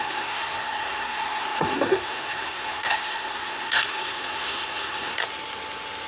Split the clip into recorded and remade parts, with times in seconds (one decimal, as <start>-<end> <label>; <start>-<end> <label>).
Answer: 0.0-5.2 remade; 5.2-6.1 recorded

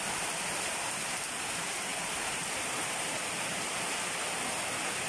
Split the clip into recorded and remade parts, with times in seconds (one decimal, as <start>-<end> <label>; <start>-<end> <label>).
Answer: 0.0-5.1 recorded